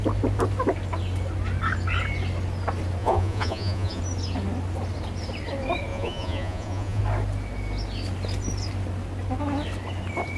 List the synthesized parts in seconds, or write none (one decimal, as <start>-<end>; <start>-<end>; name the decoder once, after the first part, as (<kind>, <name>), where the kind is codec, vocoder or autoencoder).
3.0-4.0 (vocoder, Vocos); 5.9-7.0